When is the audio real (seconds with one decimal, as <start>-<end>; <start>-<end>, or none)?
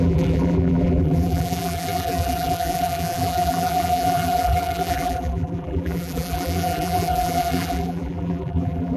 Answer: none